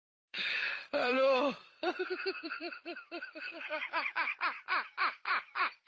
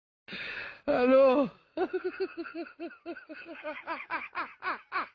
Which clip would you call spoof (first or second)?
first